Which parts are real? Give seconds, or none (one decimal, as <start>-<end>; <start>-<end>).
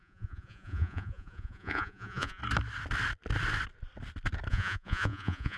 2.4-4.5